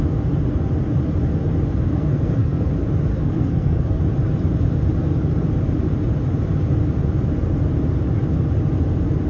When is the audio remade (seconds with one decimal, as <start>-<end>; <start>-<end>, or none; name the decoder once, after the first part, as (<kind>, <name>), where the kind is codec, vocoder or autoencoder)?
1.9-2.7 (codec, SNAC); 3.1-4.0